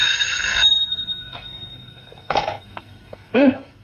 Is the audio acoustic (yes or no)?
no